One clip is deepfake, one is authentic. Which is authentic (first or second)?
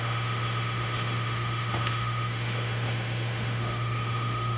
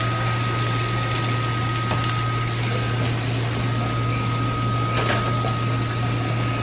second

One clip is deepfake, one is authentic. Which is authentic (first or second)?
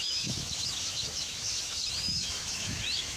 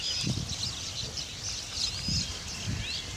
second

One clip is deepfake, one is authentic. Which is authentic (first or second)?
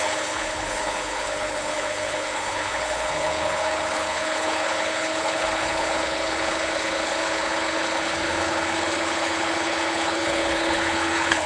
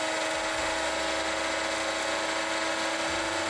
second